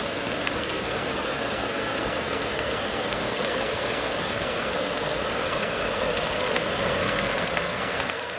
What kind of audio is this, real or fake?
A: fake